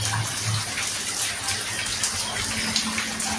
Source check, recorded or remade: recorded